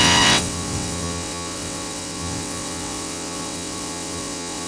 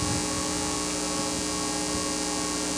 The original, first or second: second